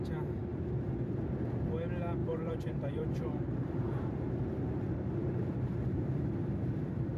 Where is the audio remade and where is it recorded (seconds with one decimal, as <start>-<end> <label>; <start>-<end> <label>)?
0.0-2.2 recorded; 2.2-4.3 remade; 4.3-5.2 recorded; 5.2-6.3 remade; 6.3-7.2 recorded